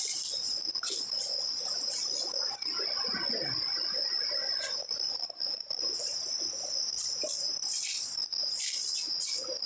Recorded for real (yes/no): yes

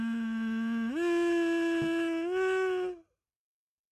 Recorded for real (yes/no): yes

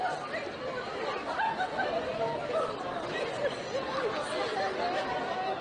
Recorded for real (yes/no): yes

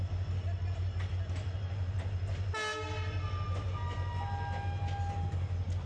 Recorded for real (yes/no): yes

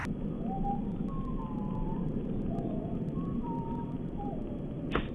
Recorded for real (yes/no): no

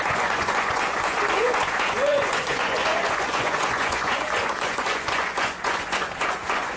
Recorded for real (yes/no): no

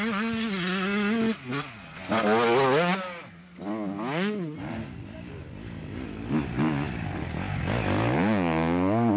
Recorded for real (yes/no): yes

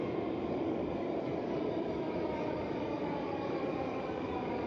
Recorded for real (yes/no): no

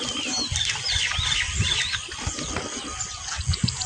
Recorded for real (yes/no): yes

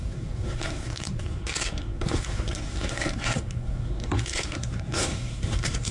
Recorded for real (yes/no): no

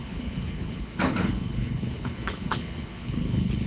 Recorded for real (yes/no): no